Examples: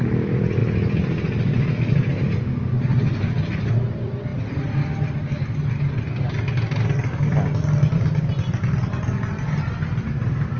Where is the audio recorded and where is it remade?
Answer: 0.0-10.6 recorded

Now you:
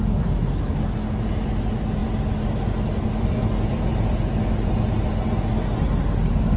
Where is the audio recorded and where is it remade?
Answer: 0.0-6.6 recorded

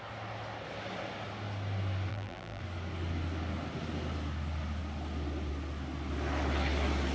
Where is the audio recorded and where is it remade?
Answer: 0.0-2.1 recorded; 2.1-2.6 remade; 2.6-7.1 recorded

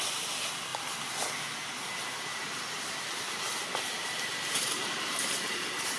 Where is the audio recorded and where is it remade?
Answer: 0.0-2.3 recorded; 2.3-6.0 remade

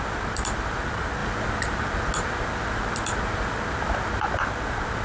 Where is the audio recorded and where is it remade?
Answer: 0.0-5.0 recorded